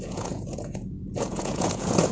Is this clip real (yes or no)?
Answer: no